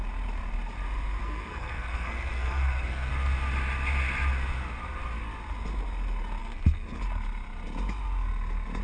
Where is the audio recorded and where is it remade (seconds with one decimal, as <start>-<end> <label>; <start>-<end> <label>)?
0.0-1.2 recorded; 1.2-3.1 remade; 3.1-6.4 recorded; 6.4-7.0 remade; 7.0-8.8 recorded